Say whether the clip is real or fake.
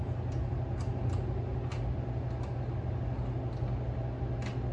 real